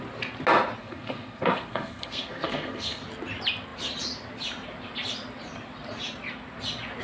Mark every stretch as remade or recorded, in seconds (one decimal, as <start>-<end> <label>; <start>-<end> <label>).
0.0-0.8 recorded; 0.8-3.0 remade; 3.0-7.0 recorded